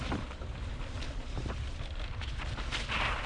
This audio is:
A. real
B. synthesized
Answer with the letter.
A